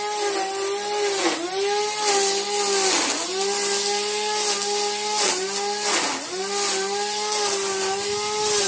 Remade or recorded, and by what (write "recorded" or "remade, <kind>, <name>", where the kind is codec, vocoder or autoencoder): recorded